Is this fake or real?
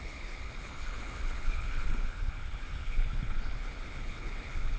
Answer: fake